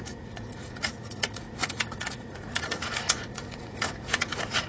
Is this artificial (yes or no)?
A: yes